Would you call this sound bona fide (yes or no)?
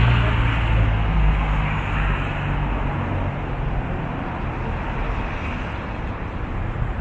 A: yes